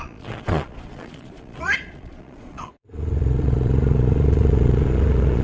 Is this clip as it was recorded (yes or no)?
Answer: no